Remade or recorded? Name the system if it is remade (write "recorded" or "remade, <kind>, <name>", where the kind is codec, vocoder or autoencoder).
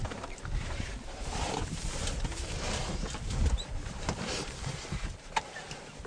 remade, vocoder, BigVGAN v2